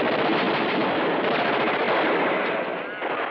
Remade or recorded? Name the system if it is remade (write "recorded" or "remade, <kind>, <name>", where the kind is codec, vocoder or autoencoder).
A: recorded